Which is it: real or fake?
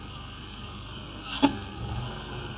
fake